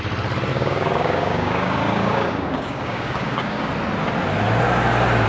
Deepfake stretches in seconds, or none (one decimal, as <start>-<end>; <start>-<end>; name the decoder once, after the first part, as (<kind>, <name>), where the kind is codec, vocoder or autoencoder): 0.5-3.7 (codec, DAC)